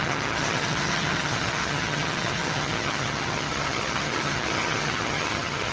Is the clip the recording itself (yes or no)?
no